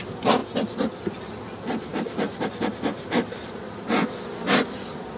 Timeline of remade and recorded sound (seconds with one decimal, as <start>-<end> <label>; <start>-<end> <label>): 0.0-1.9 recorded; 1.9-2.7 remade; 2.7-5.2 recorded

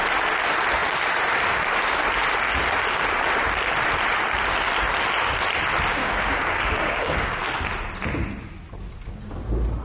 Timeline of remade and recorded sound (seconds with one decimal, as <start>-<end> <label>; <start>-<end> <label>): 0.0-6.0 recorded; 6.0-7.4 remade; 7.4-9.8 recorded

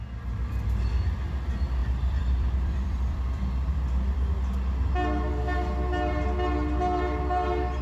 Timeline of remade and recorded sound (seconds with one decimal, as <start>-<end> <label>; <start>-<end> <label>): 0.0-1.8 recorded; 1.8-4.3 remade; 4.3-7.8 recorded

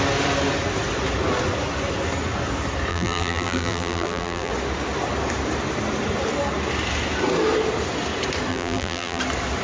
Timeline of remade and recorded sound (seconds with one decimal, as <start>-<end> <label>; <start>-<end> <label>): 0.0-2.9 recorded; 2.9-4.5 remade; 4.5-8.5 recorded; 8.5-9.2 remade; 9.2-9.6 recorded

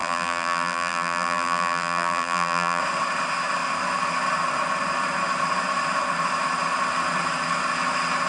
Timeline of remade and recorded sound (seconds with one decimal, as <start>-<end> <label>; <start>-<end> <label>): 0.0-2.8 remade; 2.8-8.3 recorded